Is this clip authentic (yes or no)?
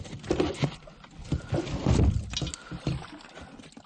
yes